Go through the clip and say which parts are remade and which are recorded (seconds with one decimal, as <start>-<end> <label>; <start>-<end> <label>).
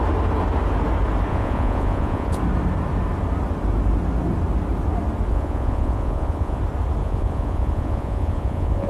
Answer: 0.0-1.3 recorded; 1.3-2.4 remade; 2.4-5.3 recorded; 5.3-6.6 remade; 6.6-7.0 recorded; 7.0-8.9 remade